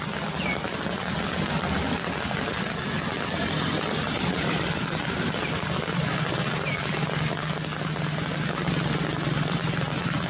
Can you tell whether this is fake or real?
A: real